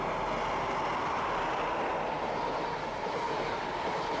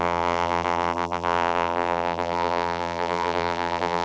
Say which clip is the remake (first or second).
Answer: second